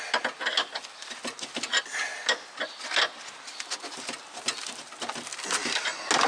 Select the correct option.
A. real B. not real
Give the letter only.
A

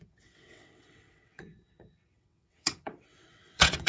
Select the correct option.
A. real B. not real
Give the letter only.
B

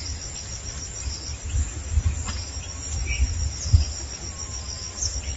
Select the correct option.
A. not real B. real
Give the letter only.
B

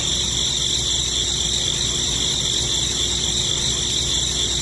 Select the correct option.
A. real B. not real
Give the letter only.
A